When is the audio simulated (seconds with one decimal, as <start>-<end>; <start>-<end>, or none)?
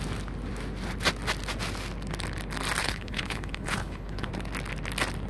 2.8-4.3